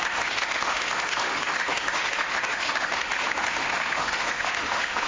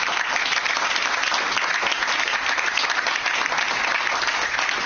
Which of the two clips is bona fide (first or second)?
second